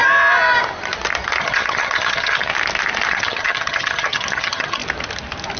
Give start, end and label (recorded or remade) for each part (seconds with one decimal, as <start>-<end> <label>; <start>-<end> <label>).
0.0-1.4 recorded; 1.4-2.5 remade; 2.5-3.1 recorded; 3.1-4.8 remade; 4.8-5.6 recorded

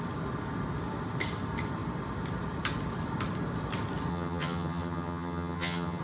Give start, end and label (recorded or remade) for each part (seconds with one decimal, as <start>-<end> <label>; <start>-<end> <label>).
0.0-4.1 recorded; 4.1-6.0 remade

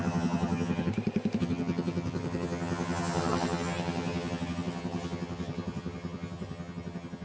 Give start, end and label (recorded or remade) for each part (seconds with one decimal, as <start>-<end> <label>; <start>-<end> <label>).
0.0-0.9 remade; 0.9-1.4 recorded; 1.4-7.2 remade